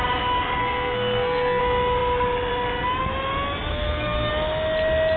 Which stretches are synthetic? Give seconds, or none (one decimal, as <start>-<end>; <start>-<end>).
0.6-1.6; 3.7-4.3